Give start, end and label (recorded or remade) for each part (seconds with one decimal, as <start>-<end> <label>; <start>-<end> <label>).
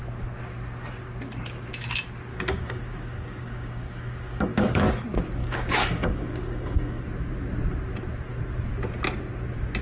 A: 0.0-2.3 recorded; 2.3-4.9 remade; 4.9-5.4 recorded; 5.4-7.0 remade; 7.0-9.8 recorded